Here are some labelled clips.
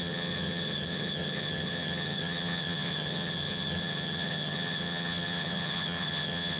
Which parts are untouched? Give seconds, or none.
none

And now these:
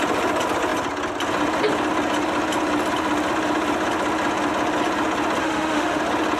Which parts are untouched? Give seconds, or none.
0.0-5.4; 6.0-6.4